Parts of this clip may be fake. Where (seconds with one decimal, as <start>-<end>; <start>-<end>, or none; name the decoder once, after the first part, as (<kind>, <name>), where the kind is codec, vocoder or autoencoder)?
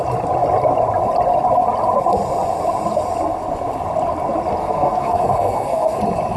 4.6-6.0 (codec, SNAC)